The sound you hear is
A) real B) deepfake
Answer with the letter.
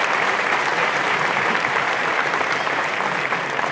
B